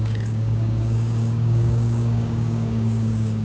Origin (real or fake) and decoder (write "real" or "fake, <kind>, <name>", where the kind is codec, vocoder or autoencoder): fake, codec, DAC